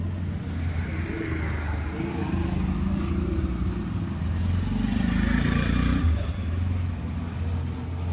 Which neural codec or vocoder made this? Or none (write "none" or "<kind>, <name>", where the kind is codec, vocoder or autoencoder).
none